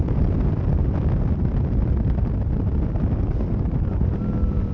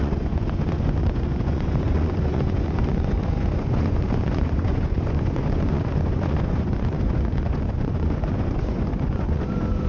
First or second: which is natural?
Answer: first